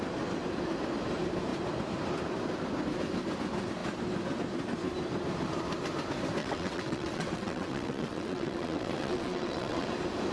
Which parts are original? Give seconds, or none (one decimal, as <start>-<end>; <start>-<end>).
0.0-6.4; 9.9-10.3